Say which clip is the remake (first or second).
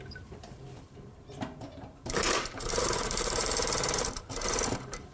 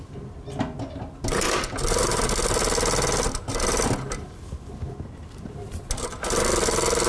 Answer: first